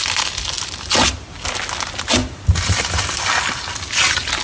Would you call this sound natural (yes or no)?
yes